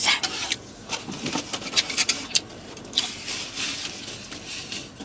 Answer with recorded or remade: recorded